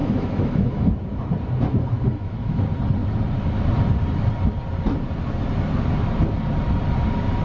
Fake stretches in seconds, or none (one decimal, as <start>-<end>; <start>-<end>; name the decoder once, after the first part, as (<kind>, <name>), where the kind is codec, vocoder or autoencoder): 0.0-0.9 (autoencoder, DAC-VAE); 1.7-2.6